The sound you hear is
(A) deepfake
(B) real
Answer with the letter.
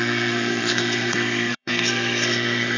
A